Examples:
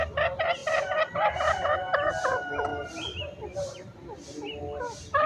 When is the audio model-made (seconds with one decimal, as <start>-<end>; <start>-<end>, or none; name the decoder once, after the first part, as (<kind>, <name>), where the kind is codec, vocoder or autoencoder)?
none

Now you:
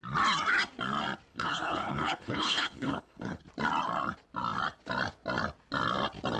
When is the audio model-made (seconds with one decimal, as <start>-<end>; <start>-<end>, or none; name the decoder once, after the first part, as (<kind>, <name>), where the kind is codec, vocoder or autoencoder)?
1.3-3.4 (codec, HILCodec)

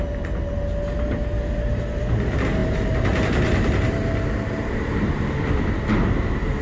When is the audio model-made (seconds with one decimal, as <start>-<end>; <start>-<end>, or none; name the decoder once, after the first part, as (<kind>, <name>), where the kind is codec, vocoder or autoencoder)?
2.6-5.1 (vocoder, BigVGAN v2)

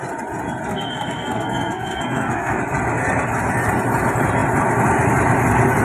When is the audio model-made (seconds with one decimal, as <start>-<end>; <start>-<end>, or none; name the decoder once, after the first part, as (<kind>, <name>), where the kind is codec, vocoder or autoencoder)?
0.7-2.6 (codec, SNAC)

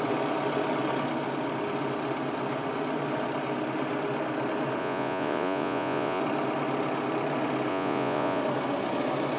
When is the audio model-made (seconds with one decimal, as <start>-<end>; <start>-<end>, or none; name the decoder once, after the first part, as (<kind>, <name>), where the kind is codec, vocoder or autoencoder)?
4.8-6.2 (vocoder, Vocos); 7.7-8.4